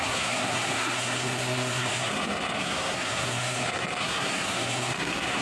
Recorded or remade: remade